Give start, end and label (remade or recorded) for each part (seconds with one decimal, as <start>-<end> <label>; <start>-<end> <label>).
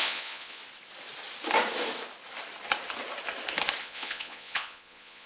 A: 0.0-0.6 remade; 0.6-3.8 recorded; 3.8-5.3 remade